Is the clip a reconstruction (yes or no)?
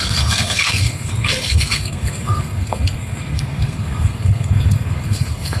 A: yes